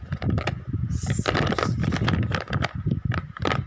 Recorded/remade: recorded